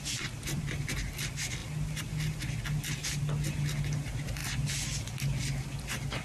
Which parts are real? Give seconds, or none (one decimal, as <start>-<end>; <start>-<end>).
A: 0.0-6.2